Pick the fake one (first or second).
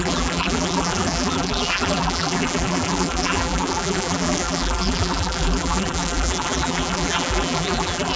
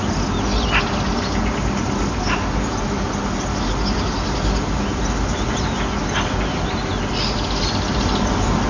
first